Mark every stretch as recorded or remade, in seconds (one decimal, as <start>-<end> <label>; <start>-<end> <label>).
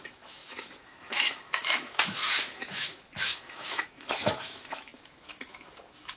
0.0-6.2 remade